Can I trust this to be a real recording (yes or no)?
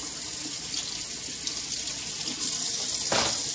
yes